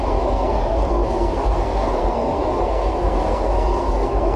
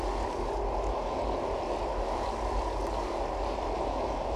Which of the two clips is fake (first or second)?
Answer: first